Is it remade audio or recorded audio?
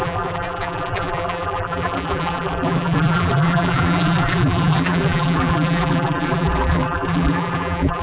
remade